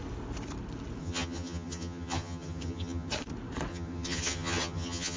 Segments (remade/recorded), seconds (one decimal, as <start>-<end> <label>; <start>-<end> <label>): 0.0-1.0 recorded; 1.0-3.1 remade; 3.1-3.7 recorded; 3.7-5.2 remade

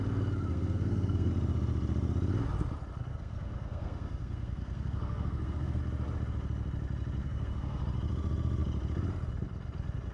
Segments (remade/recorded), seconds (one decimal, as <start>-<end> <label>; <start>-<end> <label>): 0.0-0.5 recorded; 0.5-1.3 remade; 1.3-3.1 recorded; 3.1-5.8 remade; 5.8-7.2 recorded; 7.2-7.8 remade; 7.8-10.1 recorded

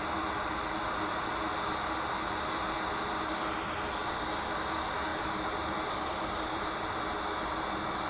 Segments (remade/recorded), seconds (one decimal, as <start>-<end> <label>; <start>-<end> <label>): 0.0-5.1 recorded; 5.1-6.9 remade; 6.9-8.1 recorded

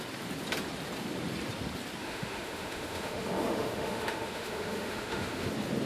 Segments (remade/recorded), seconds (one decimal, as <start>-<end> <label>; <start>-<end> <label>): 0.0-2.0 recorded; 2.0-5.5 remade; 5.5-5.9 recorded

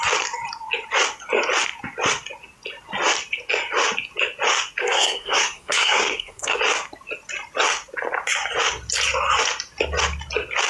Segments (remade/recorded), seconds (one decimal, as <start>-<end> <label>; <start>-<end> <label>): 0.0-4.8 recorded; 4.8-6.6 remade; 6.6-10.7 recorded

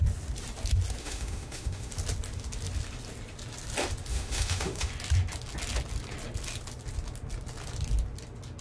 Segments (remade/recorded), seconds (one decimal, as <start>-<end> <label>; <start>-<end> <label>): 0.0-1.0 recorded; 1.0-1.9 remade; 1.9-4.1 recorded; 4.1-4.9 remade; 4.9-8.6 recorded